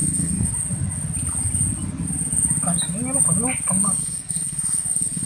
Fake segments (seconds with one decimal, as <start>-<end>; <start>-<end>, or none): 0.0-0.5; 4.0-5.3